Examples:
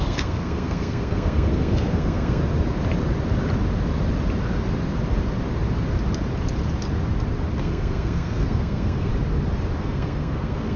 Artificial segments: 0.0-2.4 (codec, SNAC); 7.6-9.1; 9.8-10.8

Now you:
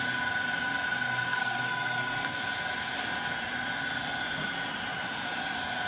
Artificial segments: 1.3-2.4 (codec, SNAC)

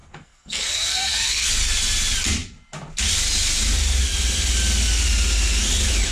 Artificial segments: 0.0-1.5 (codec, SNAC)

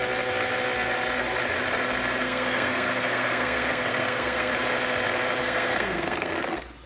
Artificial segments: 2.2-4.5 (codec, SNAC); 5.4-6.4

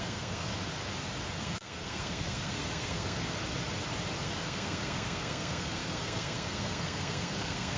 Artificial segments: 0.0-0.5 (codec, SNAC); 1.4-3.4; 4.2-7.8